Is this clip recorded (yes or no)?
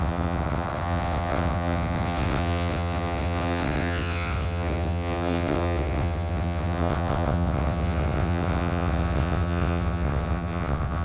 no